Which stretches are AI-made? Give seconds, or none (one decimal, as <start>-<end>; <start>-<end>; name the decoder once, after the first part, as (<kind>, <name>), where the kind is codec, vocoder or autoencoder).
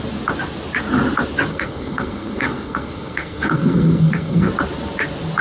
1.5-4.5 (codec, SNAC)